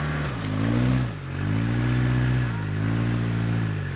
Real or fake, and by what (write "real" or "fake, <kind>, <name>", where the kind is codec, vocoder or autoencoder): real